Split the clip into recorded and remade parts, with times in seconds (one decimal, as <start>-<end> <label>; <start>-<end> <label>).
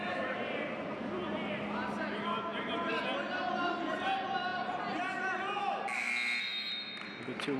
0.0-7.6 recorded